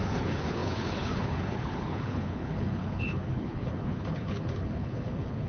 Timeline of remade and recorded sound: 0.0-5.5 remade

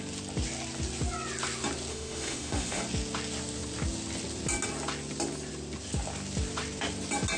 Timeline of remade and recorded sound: 0.0-1.9 recorded; 1.9-2.8 remade; 2.8-7.4 recorded

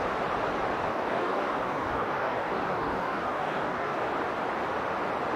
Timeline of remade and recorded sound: 0.0-0.9 recorded; 0.9-4.1 remade; 4.1-5.4 recorded

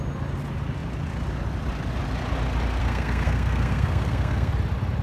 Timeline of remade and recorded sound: 0.0-2.8 recorded; 2.8-4.5 remade; 4.5-5.0 recorded

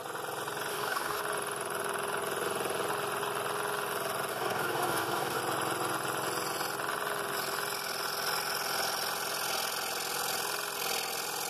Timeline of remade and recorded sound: 0.0-0.7 recorded; 0.7-1.2 remade; 1.2-4.3 recorded; 4.3-5.4 remade; 5.4-11.5 recorded